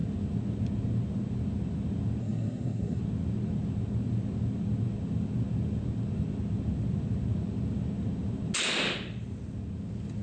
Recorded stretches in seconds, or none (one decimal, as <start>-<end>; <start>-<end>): 0.0-2.2; 3.0-10.2